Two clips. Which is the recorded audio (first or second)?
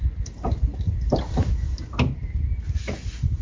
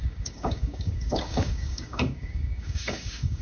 first